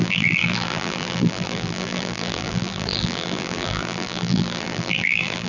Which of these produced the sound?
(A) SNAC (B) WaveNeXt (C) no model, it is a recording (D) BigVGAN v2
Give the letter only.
D